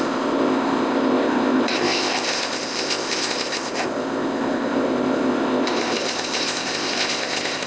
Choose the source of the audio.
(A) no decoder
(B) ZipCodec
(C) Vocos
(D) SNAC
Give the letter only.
B